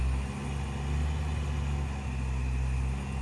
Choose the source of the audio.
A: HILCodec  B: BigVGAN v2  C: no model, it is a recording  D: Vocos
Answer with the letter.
C